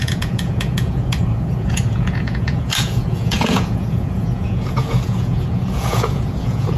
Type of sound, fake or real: fake